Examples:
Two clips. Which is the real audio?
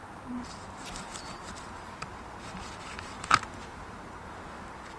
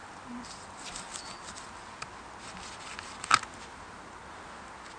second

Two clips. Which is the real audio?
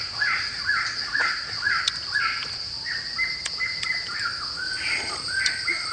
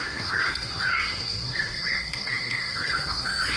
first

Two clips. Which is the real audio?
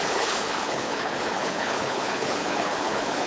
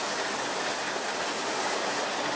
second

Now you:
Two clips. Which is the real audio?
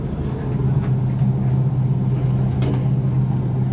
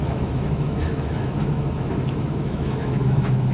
first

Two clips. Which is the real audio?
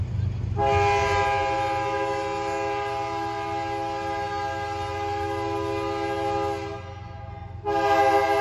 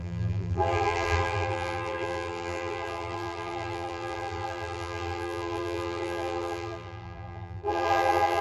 first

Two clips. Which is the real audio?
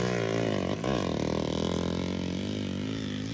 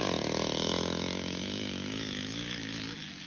first